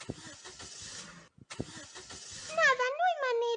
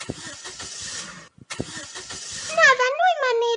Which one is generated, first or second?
second